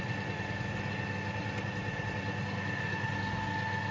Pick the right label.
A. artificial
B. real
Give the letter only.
B